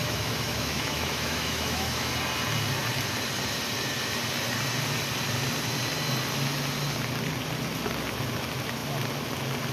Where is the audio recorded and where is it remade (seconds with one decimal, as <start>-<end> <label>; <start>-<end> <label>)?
0.0-2.1 remade; 2.1-9.7 recorded